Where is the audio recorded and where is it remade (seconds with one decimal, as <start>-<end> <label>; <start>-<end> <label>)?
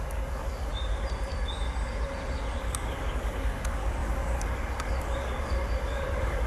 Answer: 0.0-0.7 remade; 0.7-2.6 recorded; 2.6-6.5 remade